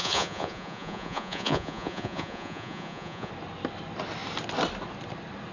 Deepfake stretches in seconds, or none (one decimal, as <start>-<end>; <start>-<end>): 0.0-3.3